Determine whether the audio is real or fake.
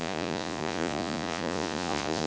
fake